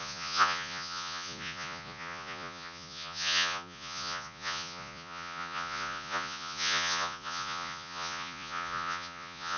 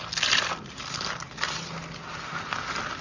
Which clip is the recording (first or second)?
second